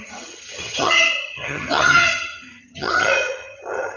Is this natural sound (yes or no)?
no